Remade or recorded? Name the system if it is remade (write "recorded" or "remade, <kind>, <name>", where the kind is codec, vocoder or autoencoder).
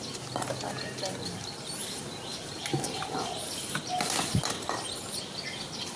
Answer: recorded